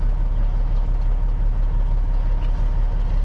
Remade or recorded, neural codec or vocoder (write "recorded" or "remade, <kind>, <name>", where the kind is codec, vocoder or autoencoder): recorded